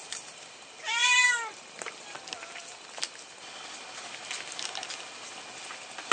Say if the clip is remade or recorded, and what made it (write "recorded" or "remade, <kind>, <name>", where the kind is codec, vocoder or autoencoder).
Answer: recorded